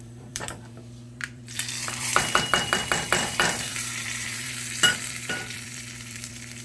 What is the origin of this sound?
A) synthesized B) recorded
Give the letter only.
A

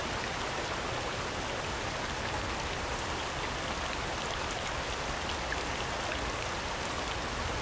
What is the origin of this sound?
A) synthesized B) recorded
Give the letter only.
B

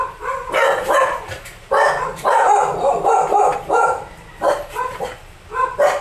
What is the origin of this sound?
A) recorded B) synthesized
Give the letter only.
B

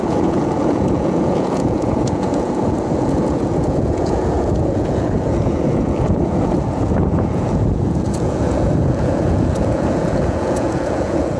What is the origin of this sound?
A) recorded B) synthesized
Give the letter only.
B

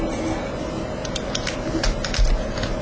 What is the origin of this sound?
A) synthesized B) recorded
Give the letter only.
B